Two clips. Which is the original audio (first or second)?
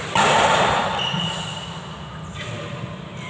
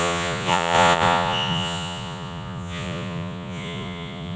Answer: first